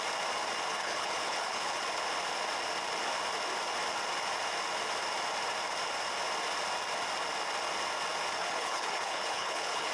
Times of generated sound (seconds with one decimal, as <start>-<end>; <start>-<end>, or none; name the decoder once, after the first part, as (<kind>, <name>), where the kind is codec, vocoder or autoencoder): 0.7-1.8 (codec, HILCodec); 8.4-9.9